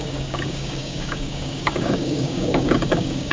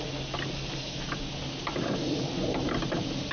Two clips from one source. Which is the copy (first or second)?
first